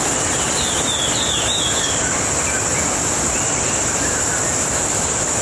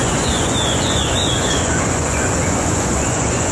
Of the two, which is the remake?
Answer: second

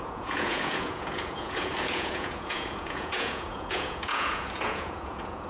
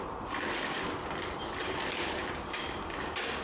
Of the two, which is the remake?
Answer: first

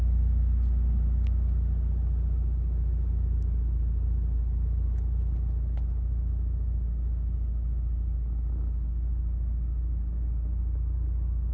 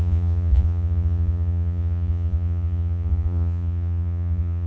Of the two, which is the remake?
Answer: second